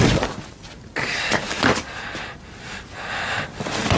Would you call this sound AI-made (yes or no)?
no